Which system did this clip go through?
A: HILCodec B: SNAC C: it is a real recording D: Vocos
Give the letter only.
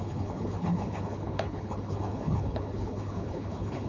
A